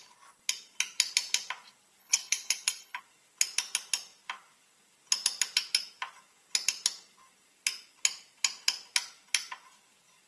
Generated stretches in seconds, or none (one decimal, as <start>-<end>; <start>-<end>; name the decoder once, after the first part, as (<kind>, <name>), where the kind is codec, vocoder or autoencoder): 2.0-3.0 (codec, HILCodec)